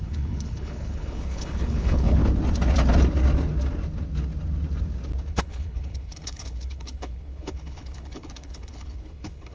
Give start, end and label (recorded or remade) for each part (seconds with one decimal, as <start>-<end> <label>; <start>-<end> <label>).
0.0-2.2 remade; 2.2-5.3 recorded; 5.3-9.5 remade